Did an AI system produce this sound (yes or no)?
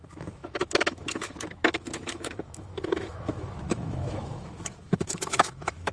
yes